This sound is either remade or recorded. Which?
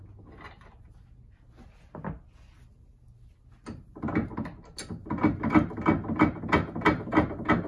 recorded